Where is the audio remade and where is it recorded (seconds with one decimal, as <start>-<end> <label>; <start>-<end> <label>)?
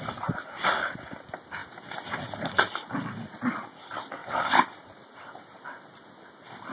0.0-1.6 recorded; 1.6-2.7 remade; 2.7-4.2 recorded; 4.2-5.6 remade; 5.6-6.7 recorded